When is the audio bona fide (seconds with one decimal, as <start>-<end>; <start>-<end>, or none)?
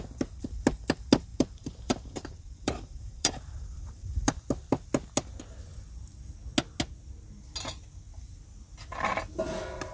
0.0-1.3; 3.9-9.9